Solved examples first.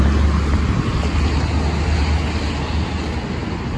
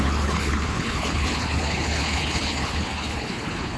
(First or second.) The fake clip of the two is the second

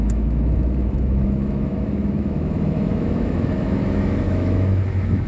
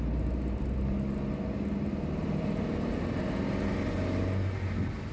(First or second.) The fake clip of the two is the first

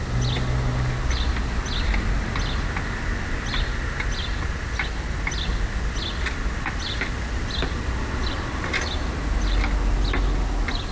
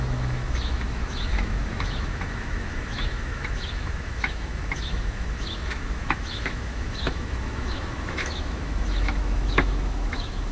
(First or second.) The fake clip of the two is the second